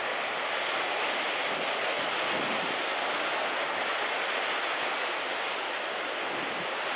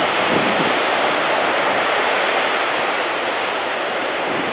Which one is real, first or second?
first